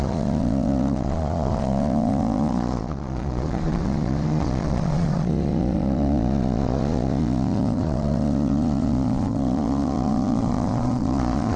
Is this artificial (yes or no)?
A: yes